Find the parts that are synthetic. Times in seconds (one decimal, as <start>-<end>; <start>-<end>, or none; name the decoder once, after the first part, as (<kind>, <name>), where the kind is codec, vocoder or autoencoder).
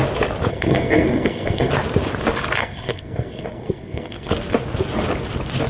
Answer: 0.5-1.7 (codec, SNAC); 2.6-4.3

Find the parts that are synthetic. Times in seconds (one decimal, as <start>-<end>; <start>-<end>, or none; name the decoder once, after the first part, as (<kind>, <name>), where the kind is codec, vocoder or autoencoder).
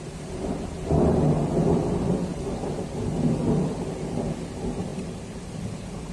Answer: none